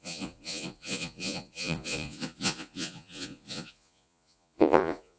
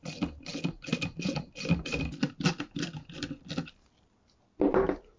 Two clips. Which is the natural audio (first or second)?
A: second